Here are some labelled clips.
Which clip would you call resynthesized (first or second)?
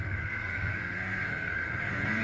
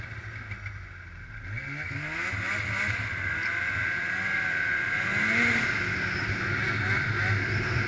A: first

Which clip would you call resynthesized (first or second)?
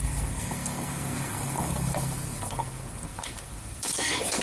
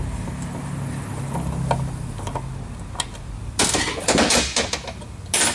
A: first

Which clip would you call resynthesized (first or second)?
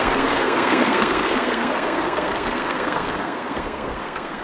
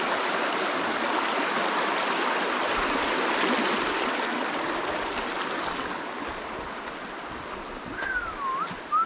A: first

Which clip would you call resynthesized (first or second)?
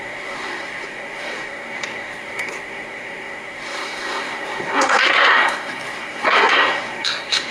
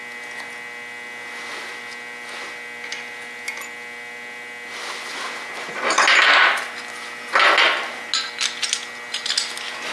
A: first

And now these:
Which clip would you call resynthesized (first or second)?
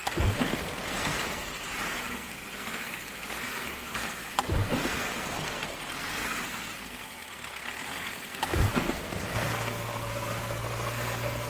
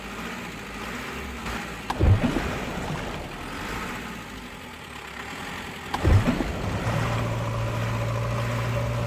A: first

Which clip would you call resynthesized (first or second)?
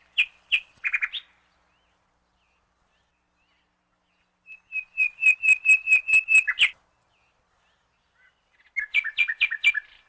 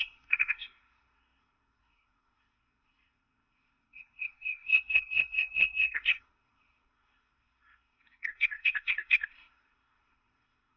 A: second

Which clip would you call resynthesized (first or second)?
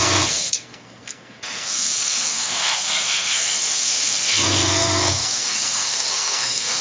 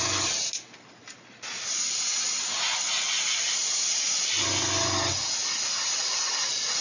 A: first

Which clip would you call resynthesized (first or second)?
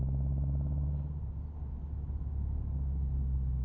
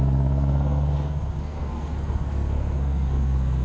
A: second